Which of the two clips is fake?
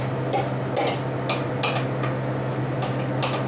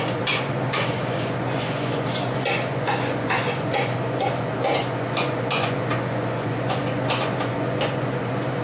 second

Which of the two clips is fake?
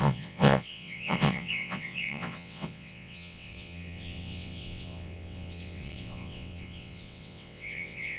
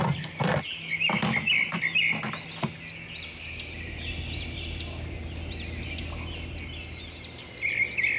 first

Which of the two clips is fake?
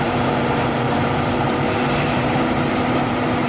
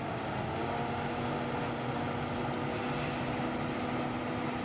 first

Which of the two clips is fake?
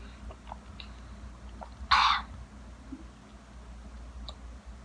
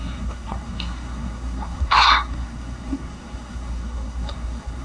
second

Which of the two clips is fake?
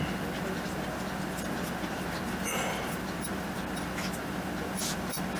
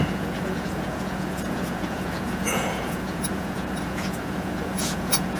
second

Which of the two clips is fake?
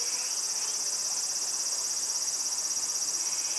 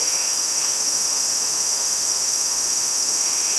second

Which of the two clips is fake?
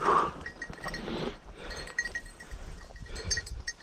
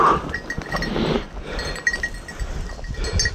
first